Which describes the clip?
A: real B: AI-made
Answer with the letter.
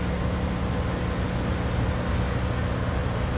A